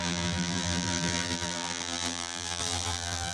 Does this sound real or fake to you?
fake